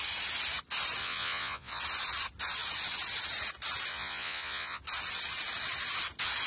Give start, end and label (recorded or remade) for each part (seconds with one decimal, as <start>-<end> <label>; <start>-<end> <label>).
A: 0.0-1.0 recorded; 1.0-1.8 remade; 1.8-3.9 recorded; 3.9-4.8 remade; 4.8-6.5 recorded